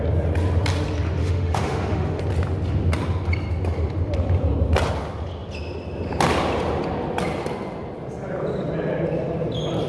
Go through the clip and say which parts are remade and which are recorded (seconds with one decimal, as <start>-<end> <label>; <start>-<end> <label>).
0.0-1.2 recorded; 1.2-2.2 remade; 2.2-9.9 recorded